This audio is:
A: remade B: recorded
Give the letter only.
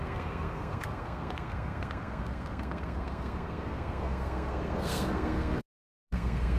A